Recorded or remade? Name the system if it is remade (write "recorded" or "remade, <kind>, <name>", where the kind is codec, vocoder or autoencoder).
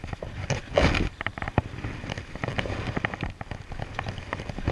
recorded